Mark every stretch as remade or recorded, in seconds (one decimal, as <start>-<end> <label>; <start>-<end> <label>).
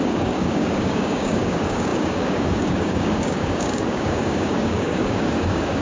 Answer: 0.0-5.8 remade